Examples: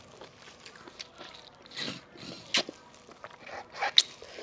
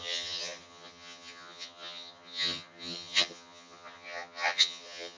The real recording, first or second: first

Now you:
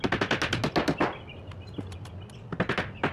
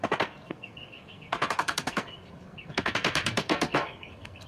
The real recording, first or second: first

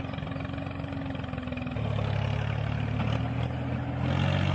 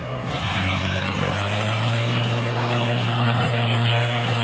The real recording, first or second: first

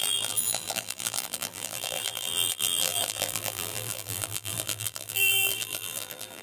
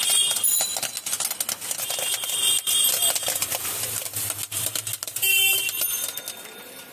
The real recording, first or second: second